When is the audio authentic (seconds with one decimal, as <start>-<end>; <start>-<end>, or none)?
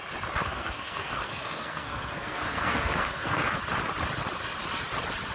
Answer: 0.0-0.4; 3.6-5.3